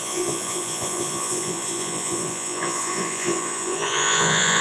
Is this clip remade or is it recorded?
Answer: remade